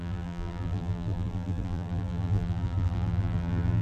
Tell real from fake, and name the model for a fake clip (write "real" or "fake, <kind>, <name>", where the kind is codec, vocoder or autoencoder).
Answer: fake, vocoder, BigVGAN v2